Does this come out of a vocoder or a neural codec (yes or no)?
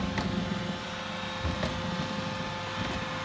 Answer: no